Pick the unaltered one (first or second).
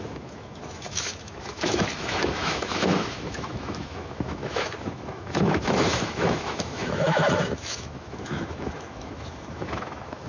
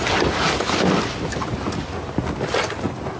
second